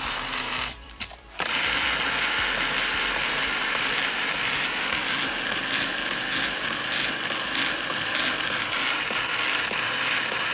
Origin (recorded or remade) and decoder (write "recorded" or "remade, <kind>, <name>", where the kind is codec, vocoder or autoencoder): remade, vocoder, BigVGAN v2